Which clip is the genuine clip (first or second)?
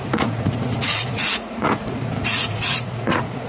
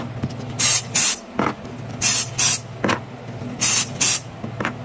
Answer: second